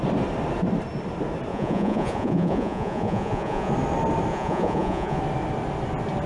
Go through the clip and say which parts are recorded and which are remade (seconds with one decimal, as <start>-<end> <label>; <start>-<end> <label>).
0.0-1.5 recorded; 1.5-3.7 remade; 3.7-4.3 recorded; 4.3-5.2 remade; 5.2-6.3 recorded